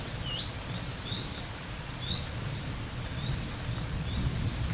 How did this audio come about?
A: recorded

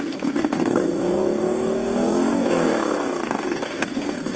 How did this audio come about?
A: remade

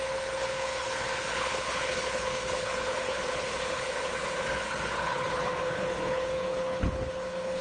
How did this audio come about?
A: remade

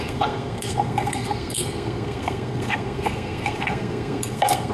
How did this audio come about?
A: remade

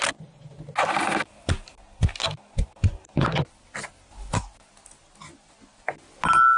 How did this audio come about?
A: recorded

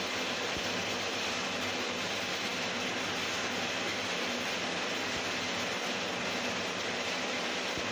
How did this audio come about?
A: recorded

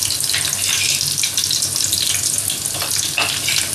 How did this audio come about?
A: recorded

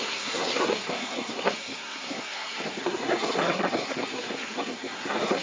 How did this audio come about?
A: remade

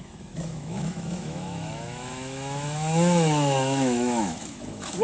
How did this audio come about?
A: remade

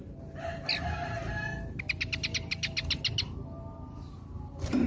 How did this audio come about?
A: recorded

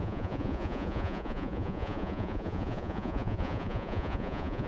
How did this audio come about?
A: remade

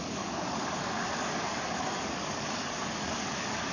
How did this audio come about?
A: remade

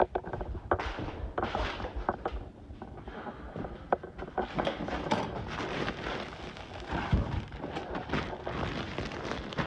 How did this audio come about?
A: recorded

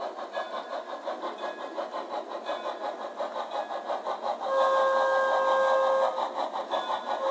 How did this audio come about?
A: recorded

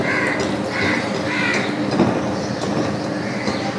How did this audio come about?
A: recorded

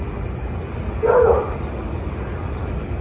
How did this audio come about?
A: recorded